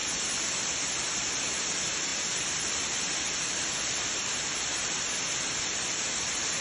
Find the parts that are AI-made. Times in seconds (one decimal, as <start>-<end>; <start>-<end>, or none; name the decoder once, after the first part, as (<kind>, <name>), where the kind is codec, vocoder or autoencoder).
1.3-6.6 (vocoder, BigVGAN v2)